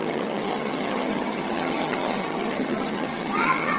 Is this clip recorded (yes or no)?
no